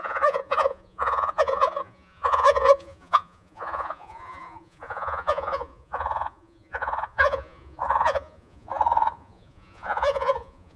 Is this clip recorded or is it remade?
remade